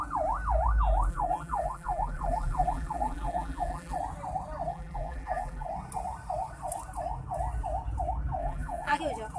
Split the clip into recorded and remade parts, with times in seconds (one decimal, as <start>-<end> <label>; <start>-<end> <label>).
0.0-1.1 recorded; 1.1-4.0 remade; 4.0-4.7 recorded; 4.7-5.7 remade; 5.7-8.4 recorded; 8.4-9.0 remade; 9.0-9.4 recorded